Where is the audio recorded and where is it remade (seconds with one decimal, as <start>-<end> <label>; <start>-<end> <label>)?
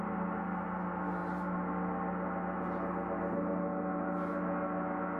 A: 0.0-5.2 recorded